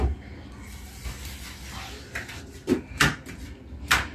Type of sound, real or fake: fake